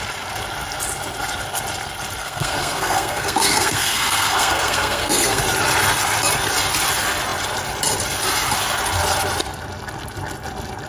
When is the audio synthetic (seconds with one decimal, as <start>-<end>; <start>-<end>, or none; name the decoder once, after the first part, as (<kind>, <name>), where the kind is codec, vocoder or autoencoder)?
2.2-5.4 (codec, SNAC)